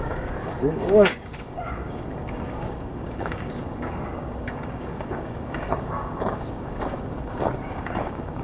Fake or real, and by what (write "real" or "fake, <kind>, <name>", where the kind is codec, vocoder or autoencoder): fake, codec, DAC